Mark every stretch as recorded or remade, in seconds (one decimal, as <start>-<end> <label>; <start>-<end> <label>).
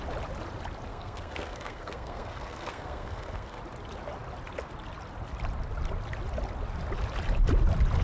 0.0-0.9 recorded; 0.9-3.6 remade; 3.6-8.0 recorded